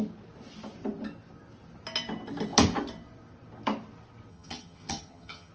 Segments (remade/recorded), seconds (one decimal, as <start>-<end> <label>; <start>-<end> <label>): 0.0-4.3 recorded; 4.3-5.5 remade